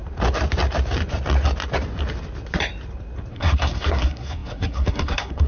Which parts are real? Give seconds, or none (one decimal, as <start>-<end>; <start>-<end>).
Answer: 0.0-3.3